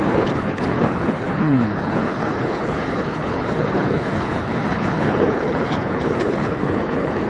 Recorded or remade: remade